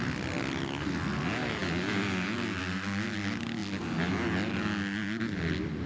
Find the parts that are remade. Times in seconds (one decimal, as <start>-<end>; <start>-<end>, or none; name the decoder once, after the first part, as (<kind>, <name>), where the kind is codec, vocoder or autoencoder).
none